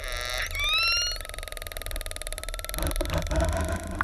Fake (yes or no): no